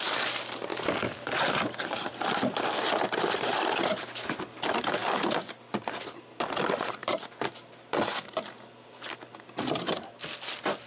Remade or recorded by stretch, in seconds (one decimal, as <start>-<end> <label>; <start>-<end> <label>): 0.0-10.9 recorded